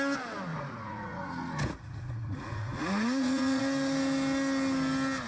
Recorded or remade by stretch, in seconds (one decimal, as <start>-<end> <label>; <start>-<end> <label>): 0.0-0.5 recorded; 0.5-3.6 remade; 3.6-5.3 recorded

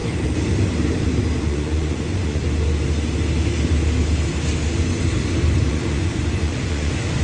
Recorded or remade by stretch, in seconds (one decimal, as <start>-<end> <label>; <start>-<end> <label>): 0.0-1.4 recorded; 1.4-2.4 remade; 2.4-5.7 recorded; 5.7-7.2 remade

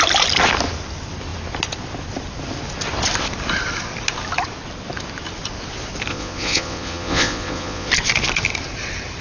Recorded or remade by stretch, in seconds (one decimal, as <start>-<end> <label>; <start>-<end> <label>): 0.0-6.1 recorded; 6.1-7.9 remade; 7.9-9.2 recorded

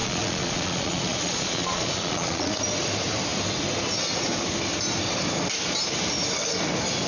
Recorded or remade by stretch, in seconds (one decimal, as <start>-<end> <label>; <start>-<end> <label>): 0.0-2.6 remade; 2.6-7.1 recorded